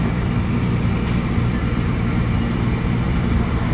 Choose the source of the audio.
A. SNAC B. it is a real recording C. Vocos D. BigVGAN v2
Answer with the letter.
D